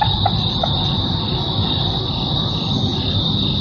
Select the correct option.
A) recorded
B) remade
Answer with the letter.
A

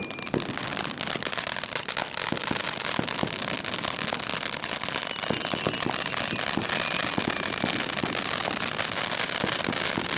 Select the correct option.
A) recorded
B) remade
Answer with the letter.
A